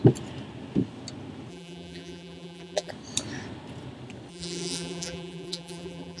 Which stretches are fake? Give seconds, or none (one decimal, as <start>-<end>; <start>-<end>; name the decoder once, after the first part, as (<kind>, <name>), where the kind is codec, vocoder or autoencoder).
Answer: 1.5-2.9 (vocoder, BigVGAN v2); 4.3-6.2